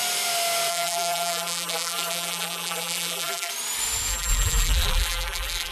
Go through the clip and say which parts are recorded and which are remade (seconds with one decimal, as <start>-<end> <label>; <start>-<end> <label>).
0.0-0.7 recorded; 0.7-3.5 remade; 3.5-4.1 recorded; 4.1-5.7 remade